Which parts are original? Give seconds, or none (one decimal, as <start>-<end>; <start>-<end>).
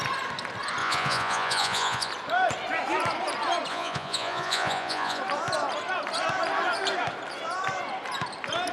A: 0.0-0.8; 2.1-3.7; 5.2-8.7